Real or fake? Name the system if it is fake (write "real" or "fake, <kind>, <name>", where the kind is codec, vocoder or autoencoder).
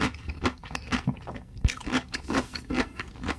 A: fake, codec, SNAC